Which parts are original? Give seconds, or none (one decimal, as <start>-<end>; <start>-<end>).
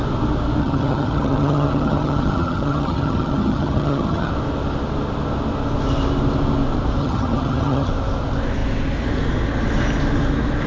0.0-0.6; 4.3-7.0; 7.9-10.7